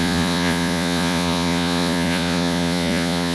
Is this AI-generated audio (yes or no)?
yes